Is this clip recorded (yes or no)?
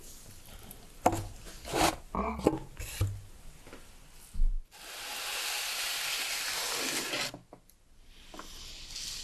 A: yes